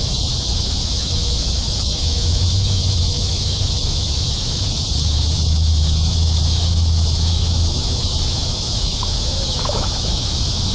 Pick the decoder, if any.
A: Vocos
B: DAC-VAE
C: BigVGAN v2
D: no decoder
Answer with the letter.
B